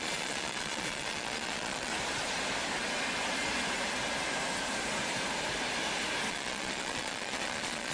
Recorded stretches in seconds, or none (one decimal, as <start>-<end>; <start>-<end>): 1.9-6.3